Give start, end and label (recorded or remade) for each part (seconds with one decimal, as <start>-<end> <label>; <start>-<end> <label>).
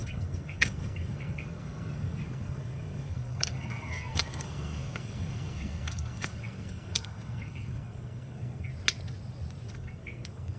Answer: 0.0-8.7 remade; 8.7-9.7 recorded; 9.7-10.6 remade